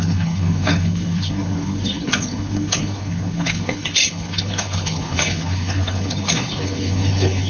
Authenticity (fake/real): fake